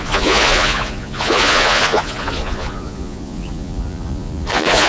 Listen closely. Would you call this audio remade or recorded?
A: remade